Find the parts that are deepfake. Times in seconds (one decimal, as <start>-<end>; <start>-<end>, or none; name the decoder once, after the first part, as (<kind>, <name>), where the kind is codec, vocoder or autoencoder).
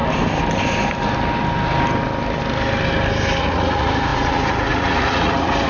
3.4-5.7 (vocoder, Vocos)